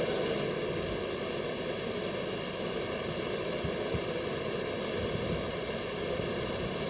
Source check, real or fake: real